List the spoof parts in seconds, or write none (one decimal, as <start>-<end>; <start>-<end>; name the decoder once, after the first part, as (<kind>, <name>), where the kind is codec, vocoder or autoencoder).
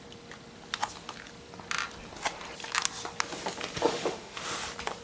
3.9-4.4 (autoencoder, DAC-VAE)